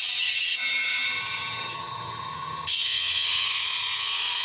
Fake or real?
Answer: fake